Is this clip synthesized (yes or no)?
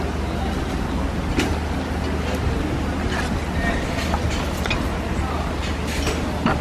no